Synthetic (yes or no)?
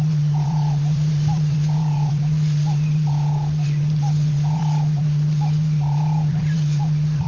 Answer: yes